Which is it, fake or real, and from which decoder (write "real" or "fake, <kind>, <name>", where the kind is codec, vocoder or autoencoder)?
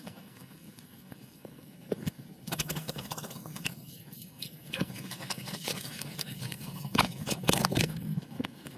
fake, codec, SNAC